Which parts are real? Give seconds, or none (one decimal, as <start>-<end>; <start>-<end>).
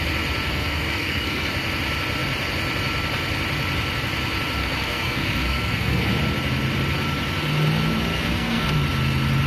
0.0-0.5; 1.5-4.6; 6.1-8.1; 8.7-9.5